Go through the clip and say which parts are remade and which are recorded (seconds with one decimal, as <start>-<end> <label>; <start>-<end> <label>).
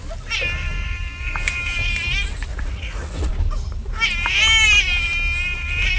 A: 0.0-2.5 recorded; 2.5-3.3 remade; 3.3-6.0 recorded